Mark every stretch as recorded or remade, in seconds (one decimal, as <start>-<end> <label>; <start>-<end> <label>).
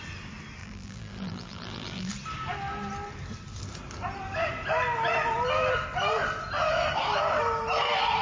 0.0-0.6 recorded; 0.6-2.1 remade; 2.1-8.2 recorded